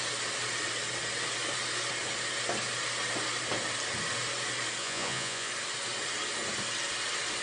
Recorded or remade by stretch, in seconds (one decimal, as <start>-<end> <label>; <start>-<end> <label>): 0.0-4.8 recorded; 4.8-5.5 remade; 5.5-7.4 recorded